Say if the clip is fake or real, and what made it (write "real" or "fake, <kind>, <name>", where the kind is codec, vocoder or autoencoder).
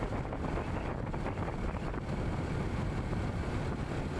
real